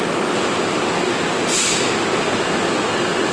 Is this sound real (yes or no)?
yes